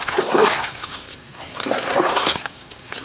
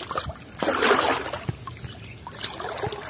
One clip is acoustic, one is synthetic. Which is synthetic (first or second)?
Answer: first